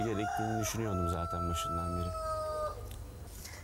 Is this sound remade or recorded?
recorded